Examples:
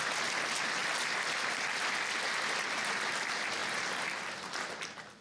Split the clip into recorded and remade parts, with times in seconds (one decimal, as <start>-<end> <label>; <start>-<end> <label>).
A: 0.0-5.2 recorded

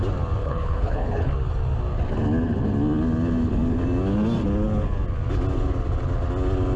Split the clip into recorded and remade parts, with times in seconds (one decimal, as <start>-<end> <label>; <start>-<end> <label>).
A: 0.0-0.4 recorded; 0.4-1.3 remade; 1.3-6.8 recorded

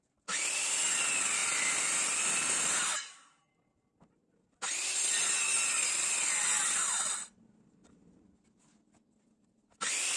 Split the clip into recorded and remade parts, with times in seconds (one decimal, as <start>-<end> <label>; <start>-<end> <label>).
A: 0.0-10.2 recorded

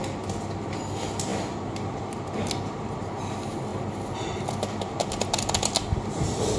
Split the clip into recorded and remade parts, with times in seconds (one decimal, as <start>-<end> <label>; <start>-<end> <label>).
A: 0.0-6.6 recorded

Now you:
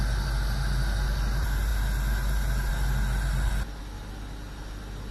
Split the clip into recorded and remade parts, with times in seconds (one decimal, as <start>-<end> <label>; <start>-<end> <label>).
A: 0.0-5.1 recorded

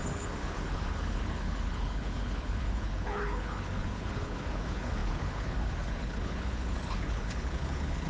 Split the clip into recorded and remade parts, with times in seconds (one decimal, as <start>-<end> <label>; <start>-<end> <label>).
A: 0.0-8.1 remade

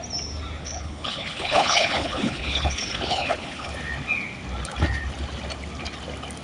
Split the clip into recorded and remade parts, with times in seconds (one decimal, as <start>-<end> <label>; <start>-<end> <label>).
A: 0.0-0.6 recorded; 0.6-3.7 remade; 3.7-6.4 recorded